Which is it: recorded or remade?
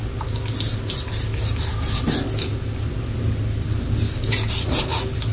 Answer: recorded